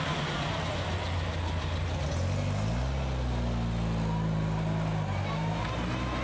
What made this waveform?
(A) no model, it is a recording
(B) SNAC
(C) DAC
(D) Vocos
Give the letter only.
A